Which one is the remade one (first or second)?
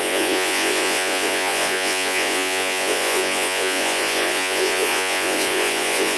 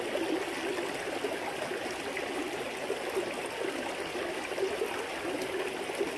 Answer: first